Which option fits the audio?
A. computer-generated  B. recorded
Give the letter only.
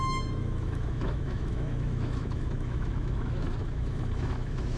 A